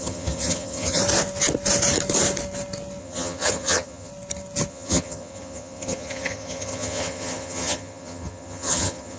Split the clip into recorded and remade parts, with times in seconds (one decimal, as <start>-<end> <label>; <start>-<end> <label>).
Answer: 0.0-1.0 remade; 1.0-3.0 recorded; 3.0-4.1 remade; 4.1-4.7 recorded; 4.7-9.2 remade